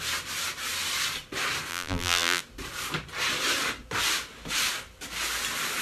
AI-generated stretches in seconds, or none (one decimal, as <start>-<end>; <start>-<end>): 1.7-2.4